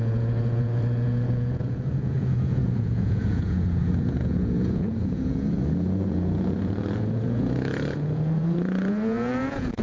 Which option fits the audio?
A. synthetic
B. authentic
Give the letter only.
A